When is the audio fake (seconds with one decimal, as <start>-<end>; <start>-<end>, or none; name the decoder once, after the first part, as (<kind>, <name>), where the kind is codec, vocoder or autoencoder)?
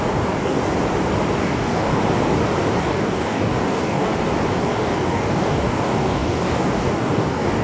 0.0-0.6 (codec, DAC); 1.4-2.0; 2.8-4.1; 4.6-7.6